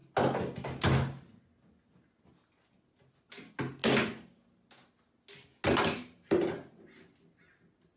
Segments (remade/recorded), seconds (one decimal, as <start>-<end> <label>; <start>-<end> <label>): 0.0-8.0 recorded

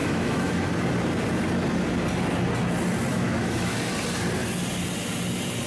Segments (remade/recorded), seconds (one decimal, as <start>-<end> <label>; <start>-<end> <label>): 0.0-0.7 remade; 0.7-3.1 recorded; 3.1-3.7 remade; 3.7-5.7 recorded

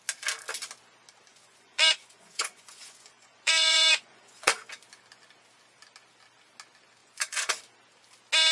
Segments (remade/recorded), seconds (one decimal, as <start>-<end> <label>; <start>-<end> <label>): 0.0-1.3 recorded; 1.3-4.7 remade; 4.7-7.0 recorded; 7.0-7.6 remade; 7.6-8.5 recorded

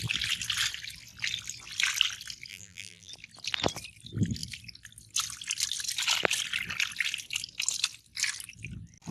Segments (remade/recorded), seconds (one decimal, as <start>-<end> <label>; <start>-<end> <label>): 0.0-2.5 recorded; 2.5-3.1 remade; 3.1-9.1 recorded

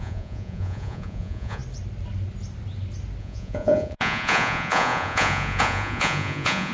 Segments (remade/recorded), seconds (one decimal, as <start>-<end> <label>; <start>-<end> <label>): 0.0-1.6 remade; 1.6-3.2 recorded; 3.2-6.7 remade

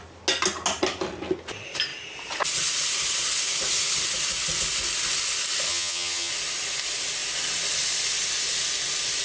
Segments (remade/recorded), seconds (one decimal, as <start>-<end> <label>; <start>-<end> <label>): 0.0-5.7 recorded; 5.7-6.3 remade; 6.3-9.2 recorded

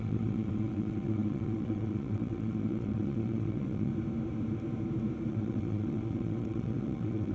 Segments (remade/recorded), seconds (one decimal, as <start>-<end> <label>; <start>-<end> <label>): 0.0-3.9 remade; 3.9-5.3 recorded; 5.3-7.3 remade

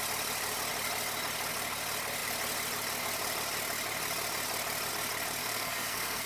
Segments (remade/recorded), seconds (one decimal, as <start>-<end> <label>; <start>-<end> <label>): 0.0-5.4 recorded; 5.4-6.3 remade